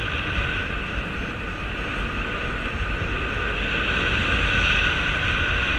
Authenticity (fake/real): real